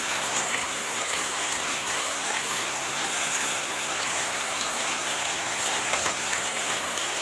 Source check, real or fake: fake